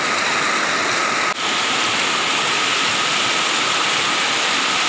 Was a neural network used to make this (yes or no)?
no